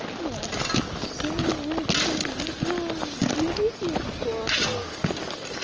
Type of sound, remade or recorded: recorded